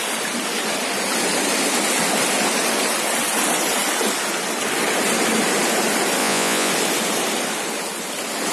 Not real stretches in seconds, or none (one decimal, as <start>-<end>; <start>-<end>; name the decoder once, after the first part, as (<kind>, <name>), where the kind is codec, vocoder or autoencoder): 6.2-6.7 (vocoder, Vocos)